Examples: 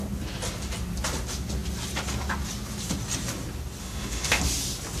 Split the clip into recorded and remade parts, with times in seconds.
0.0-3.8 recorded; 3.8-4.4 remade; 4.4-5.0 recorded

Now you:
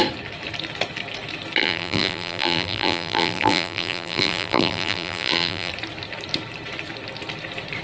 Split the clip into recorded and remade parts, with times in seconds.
0.0-1.6 recorded; 1.6-5.7 remade; 5.7-7.8 recorded

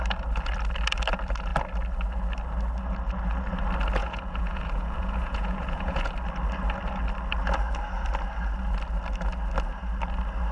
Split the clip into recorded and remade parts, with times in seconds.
0.0-4.0 recorded; 4.0-6.1 remade; 6.1-10.5 recorded

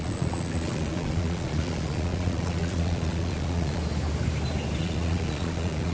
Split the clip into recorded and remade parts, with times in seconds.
0.0-3.8 remade; 3.8-4.8 recorded; 4.8-5.9 remade

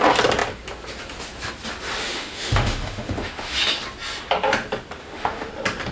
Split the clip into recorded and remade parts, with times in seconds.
0.0-2.0 recorded; 2.0-3.6 remade; 3.6-5.0 recorded; 5.0-5.5 remade; 5.5-5.9 recorded

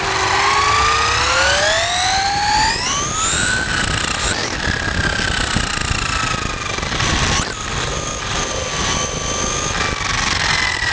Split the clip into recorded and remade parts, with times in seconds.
0.0-10.9 recorded

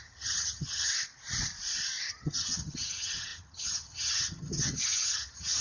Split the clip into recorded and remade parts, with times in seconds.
0.0-0.9 remade; 0.9-2.1 recorded; 2.1-5.6 remade